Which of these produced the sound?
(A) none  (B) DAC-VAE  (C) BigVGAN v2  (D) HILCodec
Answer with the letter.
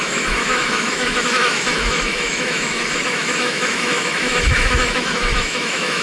B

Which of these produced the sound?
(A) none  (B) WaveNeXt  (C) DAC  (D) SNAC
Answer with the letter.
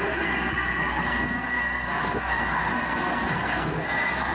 D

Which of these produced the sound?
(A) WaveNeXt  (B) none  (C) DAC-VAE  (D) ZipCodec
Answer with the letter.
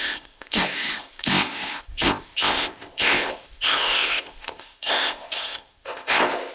D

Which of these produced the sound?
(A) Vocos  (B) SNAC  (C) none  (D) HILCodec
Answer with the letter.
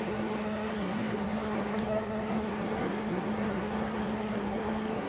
B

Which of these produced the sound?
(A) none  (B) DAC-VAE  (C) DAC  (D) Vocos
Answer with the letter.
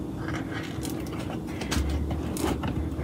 A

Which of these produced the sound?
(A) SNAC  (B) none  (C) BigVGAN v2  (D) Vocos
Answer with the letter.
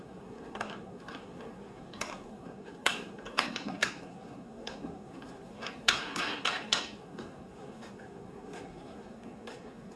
A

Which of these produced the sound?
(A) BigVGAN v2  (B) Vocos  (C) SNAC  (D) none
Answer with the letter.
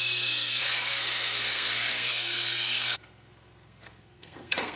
C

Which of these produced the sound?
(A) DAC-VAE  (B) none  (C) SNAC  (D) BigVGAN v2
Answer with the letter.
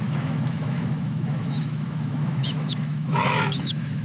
A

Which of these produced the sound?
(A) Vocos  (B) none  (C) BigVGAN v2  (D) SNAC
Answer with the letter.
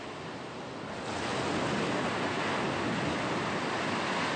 B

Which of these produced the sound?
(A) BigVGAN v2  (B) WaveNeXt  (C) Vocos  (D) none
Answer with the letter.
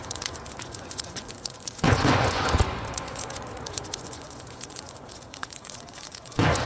C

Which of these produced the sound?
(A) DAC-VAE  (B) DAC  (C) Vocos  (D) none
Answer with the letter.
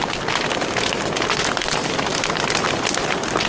D